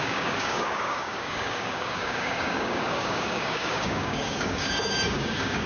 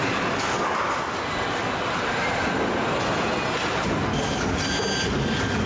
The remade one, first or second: first